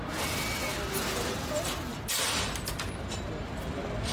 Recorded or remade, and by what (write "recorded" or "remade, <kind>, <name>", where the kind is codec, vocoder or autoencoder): recorded